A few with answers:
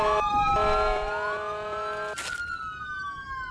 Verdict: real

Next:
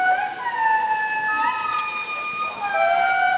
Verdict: real